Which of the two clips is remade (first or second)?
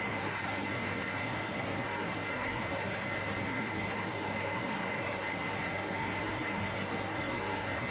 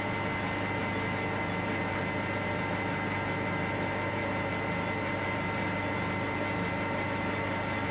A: first